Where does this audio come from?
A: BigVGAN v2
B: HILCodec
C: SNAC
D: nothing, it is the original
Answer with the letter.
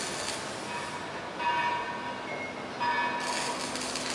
D